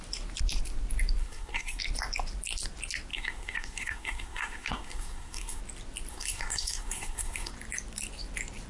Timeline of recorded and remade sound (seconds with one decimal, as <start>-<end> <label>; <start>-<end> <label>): 0.0-1.2 recorded; 1.2-1.8 remade; 1.8-3.1 recorded; 3.1-5.6 remade; 5.6-6.1 recorded; 6.1-7.5 remade; 7.5-8.7 recorded